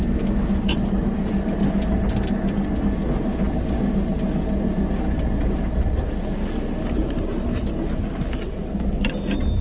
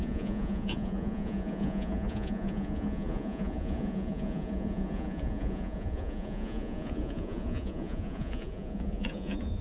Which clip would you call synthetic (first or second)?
second